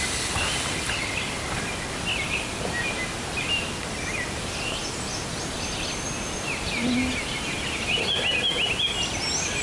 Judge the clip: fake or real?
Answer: real